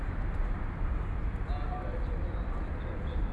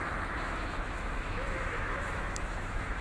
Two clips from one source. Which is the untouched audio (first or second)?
first